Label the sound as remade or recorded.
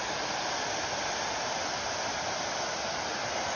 recorded